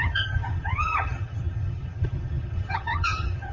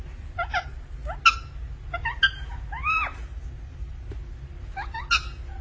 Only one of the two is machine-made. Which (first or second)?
first